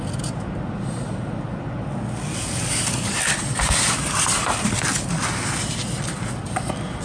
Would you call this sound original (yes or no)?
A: yes